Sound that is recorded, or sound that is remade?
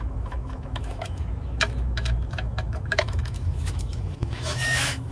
remade